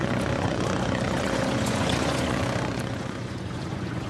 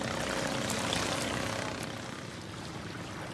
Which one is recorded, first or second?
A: second